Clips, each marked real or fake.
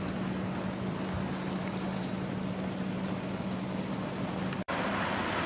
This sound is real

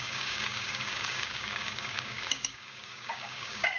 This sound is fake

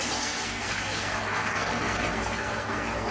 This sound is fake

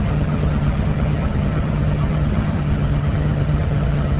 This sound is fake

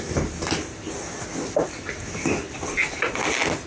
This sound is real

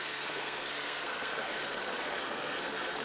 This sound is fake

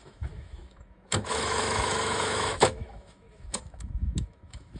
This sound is fake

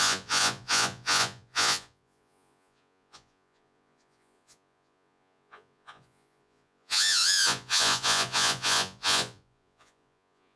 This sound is fake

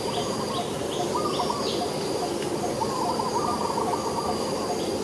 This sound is real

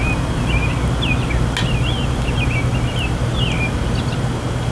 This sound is real